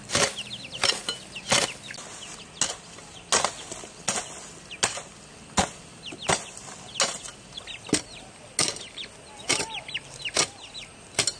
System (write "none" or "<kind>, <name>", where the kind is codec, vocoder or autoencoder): none